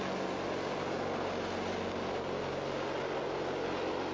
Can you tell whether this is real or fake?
real